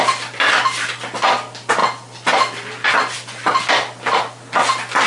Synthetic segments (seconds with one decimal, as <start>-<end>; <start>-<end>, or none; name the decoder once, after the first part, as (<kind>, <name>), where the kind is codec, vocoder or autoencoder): none